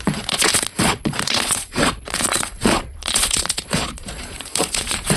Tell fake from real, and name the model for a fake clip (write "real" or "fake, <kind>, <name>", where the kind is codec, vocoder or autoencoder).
fake, vocoder, Vocos